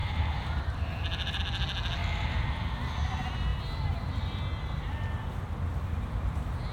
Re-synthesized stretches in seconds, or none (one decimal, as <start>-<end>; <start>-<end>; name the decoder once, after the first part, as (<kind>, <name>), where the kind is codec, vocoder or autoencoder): 0.0-1.4 (vocoder, BigVGAN v2); 2.0-2.7; 3.5-4.6